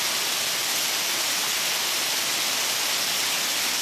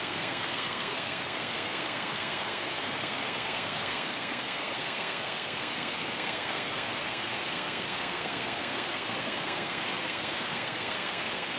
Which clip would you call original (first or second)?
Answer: first